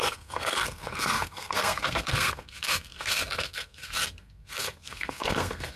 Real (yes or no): no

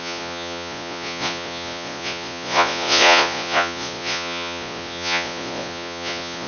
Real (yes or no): no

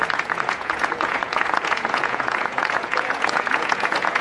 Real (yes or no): no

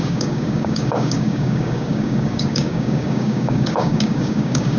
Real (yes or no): no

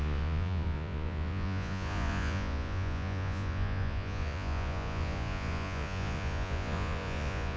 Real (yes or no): no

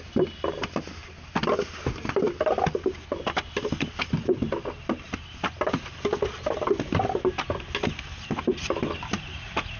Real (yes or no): yes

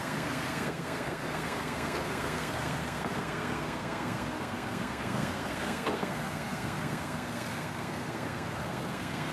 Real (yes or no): no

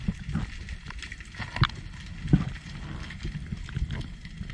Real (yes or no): yes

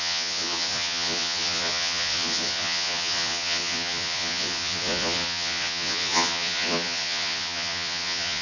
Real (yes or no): no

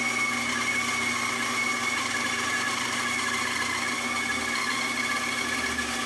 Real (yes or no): yes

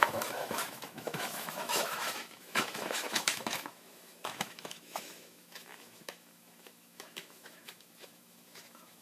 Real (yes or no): no